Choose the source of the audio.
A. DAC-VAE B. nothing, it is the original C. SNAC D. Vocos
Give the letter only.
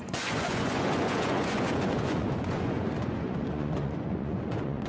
D